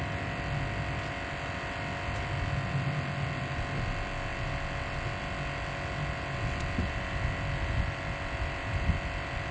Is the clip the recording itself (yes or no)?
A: yes